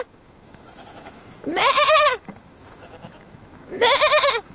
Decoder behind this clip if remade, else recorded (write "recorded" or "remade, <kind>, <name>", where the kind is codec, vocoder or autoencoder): remade, autoencoder, DAC-VAE